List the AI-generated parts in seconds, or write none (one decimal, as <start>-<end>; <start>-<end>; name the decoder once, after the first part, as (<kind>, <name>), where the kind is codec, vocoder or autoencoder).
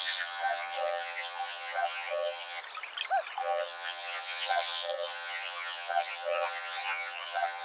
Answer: 0.0-2.6 (vocoder, HiFi-GAN); 3.4-7.6